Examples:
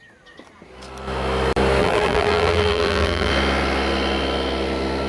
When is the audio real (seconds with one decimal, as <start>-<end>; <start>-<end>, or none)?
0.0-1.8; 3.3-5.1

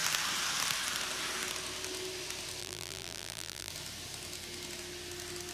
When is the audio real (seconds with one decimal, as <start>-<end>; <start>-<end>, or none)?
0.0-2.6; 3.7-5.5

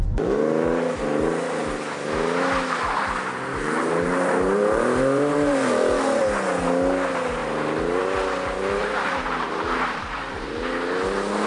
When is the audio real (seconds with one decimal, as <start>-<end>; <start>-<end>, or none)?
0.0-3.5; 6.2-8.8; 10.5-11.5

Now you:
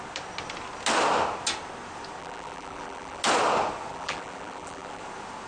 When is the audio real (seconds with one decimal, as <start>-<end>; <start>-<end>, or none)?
0.0-2.2; 3.2-3.9; 5.0-5.5

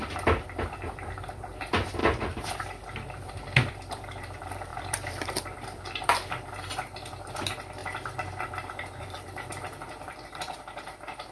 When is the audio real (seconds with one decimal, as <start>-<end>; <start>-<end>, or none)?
7.8-8.4

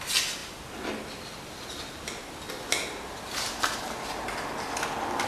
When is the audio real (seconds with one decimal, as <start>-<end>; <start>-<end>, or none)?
0.0-5.3